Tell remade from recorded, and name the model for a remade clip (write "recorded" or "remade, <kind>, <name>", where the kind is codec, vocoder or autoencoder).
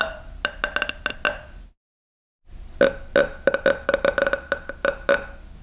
recorded